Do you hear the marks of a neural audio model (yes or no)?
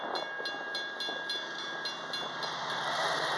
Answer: no